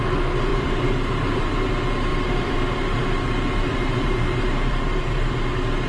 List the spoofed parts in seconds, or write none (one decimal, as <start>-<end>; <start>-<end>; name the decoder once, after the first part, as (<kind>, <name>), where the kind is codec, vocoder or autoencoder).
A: 0.5-1.7 (vocoder, BigVGAN v2); 2.1-5.3